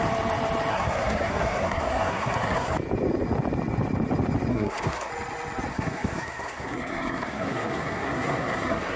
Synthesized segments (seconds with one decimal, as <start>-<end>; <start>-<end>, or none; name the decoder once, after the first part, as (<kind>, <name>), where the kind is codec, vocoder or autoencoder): 0.7-2.7 (codec, SNAC); 4.5-5.1; 5.7-9.0